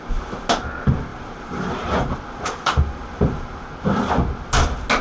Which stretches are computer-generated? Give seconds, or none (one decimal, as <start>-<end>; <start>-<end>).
1.1-4.1